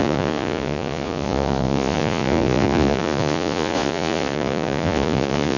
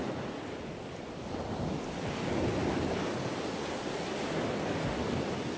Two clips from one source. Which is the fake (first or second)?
first